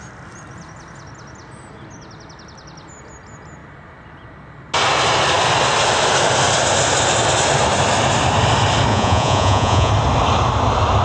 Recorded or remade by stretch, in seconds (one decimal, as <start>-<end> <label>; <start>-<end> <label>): 0.0-8.9 recorded; 8.9-9.9 remade; 9.9-11.0 recorded